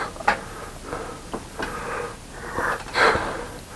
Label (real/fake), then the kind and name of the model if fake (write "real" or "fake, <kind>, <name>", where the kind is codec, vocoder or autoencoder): real